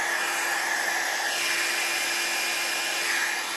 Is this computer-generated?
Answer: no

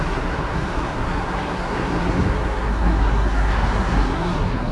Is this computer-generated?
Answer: yes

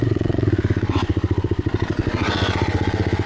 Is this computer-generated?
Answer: yes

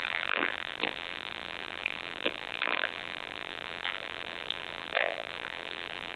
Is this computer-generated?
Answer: yes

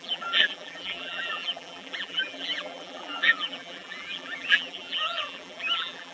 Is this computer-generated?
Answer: yes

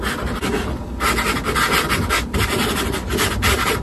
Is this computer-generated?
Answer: no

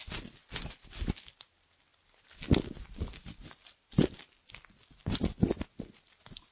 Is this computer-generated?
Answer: no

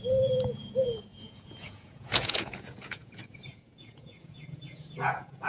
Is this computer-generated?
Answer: yes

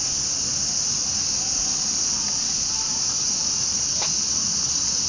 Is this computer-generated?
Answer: no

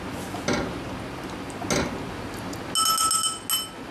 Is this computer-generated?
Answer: no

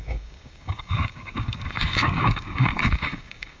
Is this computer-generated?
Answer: yes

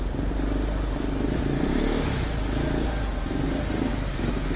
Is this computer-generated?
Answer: no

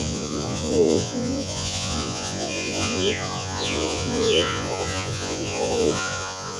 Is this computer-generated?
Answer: yes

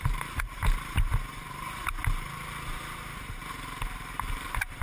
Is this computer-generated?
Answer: yes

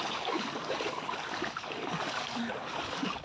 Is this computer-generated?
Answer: yes